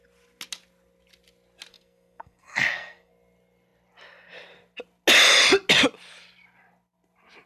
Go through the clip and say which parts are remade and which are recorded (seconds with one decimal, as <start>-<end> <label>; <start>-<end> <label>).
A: 0.0-1.7 recorded; 1.7-3.1 remade; 3.1-7.5 recorded